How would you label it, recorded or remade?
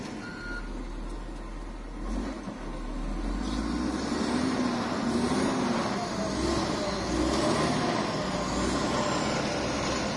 recorded